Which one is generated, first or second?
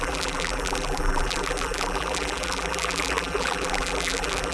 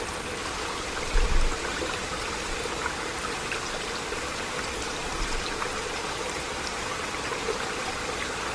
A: first